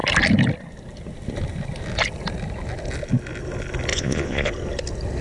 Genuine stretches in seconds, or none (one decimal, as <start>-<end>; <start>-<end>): 0.0-3.9; 4.5-5.2